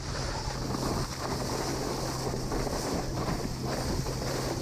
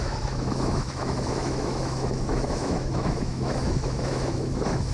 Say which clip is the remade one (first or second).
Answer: second